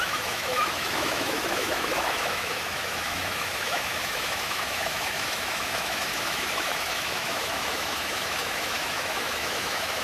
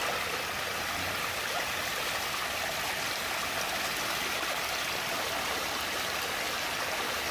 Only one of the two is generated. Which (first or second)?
first